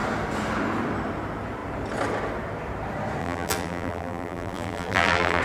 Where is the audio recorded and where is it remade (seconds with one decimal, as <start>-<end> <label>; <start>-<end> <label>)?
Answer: 0.0-3.2 recorded; 3.2-5.4 remade